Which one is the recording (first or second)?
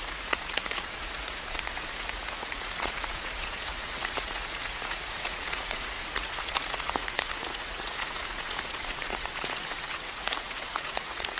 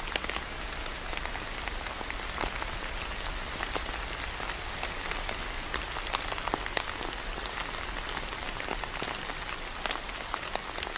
second